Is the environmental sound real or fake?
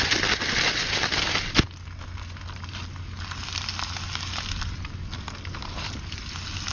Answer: real